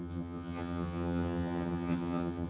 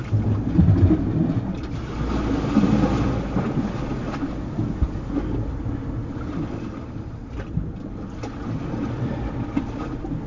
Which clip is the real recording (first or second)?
second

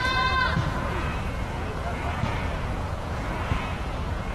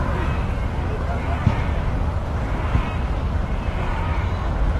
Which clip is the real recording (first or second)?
second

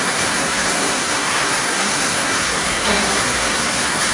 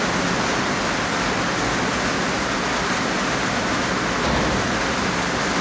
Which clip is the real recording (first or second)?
second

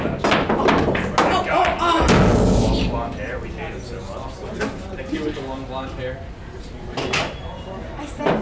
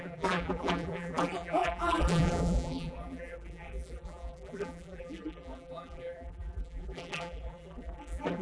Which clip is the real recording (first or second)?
first